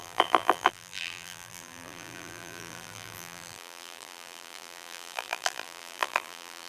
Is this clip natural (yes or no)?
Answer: no